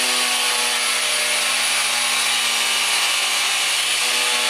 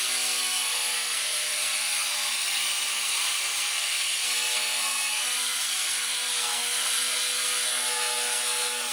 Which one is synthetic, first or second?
second